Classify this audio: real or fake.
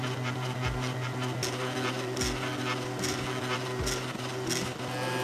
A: real